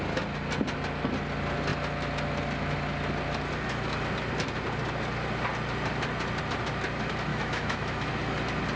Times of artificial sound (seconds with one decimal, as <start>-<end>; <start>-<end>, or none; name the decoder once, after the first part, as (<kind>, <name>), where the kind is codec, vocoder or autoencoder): 7.3-8.1 (autoencoder, DAC-VAE)